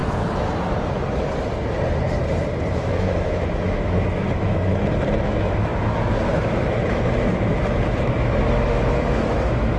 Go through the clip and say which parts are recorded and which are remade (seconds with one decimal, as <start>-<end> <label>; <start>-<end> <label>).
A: 0.0-2.7 recorded; 2.7-4.7 remade; 4.7-5.2 recorded; 5.2-9.8 remade